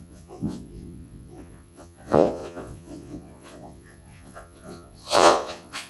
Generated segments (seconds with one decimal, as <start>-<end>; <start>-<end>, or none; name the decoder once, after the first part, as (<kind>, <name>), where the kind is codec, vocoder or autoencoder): 0.0-5.9 (vocoder, Vocos)